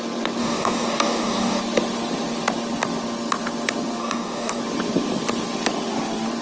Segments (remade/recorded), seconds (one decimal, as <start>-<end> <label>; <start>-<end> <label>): 0.0-0.4 recorded; 0.4-1.6 remade; 1.6-4.0 recorded; 4.0-4.6 remade; 4.6-6.4 recorded